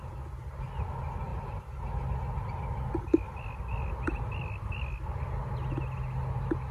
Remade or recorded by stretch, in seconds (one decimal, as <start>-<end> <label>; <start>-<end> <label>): 0.0-6.7 recorded